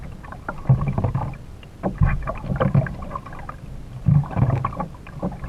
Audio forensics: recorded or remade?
recorded